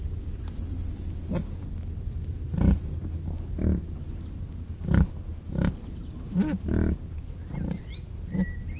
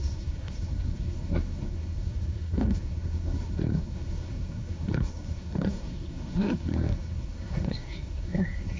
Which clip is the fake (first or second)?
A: second